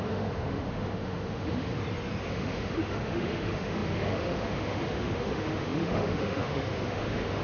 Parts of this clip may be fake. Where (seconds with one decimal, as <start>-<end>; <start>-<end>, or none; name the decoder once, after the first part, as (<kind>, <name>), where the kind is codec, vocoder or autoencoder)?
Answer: 0.0-1.7 (autoencoder, DAC-VAE); 2.2-7.4